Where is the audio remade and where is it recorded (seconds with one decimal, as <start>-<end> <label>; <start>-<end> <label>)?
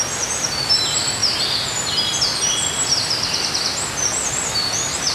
0.0-5.1 recorded